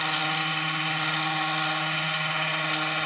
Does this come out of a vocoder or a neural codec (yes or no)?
no